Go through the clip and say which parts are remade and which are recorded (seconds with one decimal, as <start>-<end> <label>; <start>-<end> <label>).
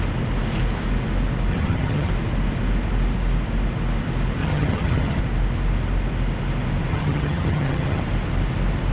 0.0-1.5 recorded; 1.5-2.1 remade; 2.1-4.4 recorded; 4.4-5.2 remade; 5.2-6.9 recorded; 6.9-8.0 remade; 8.0-8.9 recorded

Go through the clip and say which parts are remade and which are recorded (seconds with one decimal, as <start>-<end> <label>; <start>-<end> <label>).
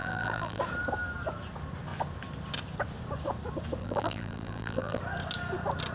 0.0-0.6 remade; 0.6-3.8 recorded; 3.8-5.0 remade; 5.0-5.9 recorded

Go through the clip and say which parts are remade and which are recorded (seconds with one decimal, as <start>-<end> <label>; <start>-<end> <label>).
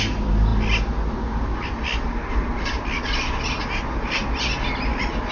0.0-5.3 recorded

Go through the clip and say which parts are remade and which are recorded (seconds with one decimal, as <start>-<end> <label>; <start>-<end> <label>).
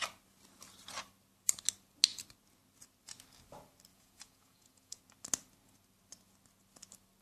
0.0-3.9 recorded; 3.9-5.0 remade; 5.0-7.2 recorded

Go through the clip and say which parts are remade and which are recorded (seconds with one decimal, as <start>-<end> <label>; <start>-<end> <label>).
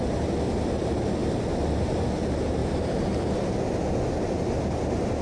0.0-5.2 recorded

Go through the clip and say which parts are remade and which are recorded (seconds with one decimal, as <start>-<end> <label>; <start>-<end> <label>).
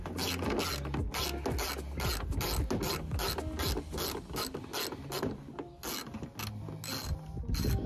0.0-7.9 recorded